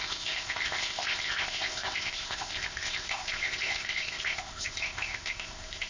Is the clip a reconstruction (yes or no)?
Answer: yes